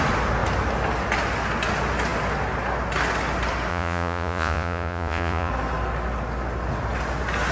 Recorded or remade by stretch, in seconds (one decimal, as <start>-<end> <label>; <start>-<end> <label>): 0.0-3.7 recorded; 3.7-5.5 remade; 5.5-7.5 recorded